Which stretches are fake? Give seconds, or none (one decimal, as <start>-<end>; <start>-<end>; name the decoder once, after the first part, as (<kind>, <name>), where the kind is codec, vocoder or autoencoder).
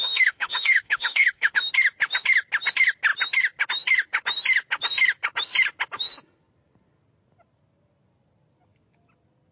0.0-1.6 (autoencoder, DAC-VAE)